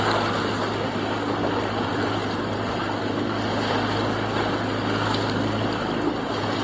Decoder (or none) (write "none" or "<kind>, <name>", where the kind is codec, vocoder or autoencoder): none